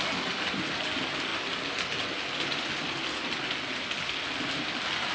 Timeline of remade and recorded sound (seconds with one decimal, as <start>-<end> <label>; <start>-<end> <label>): 0.0-5.1 recorded